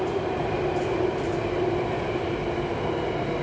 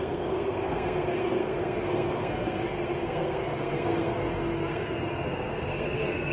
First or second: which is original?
first